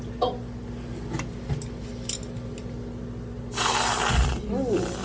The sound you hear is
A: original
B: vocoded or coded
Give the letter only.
A